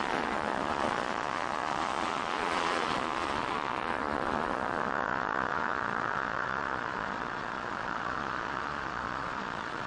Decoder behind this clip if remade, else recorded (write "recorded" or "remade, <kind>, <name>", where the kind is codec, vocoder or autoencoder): remade, vocoder, Vocos